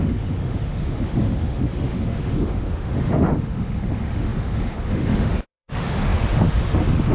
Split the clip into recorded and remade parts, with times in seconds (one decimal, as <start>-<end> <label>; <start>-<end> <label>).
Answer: 0.0-7.1 remade